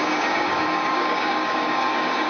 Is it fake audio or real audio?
fake